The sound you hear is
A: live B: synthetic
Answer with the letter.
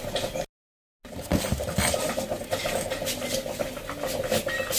A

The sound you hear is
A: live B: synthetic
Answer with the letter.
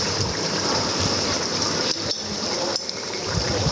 B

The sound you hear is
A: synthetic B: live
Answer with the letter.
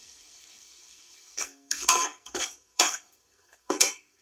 A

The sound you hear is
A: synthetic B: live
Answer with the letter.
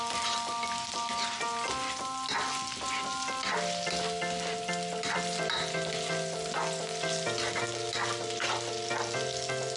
B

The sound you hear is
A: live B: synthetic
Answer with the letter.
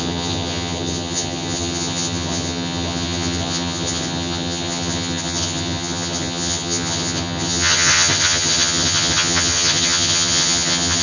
B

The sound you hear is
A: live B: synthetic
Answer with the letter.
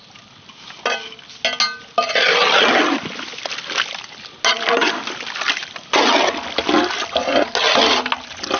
A